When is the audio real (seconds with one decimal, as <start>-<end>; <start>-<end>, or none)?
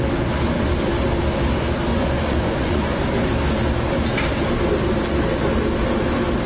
0.0-1.9; 3.0-6.5